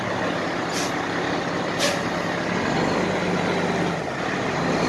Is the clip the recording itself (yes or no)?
yes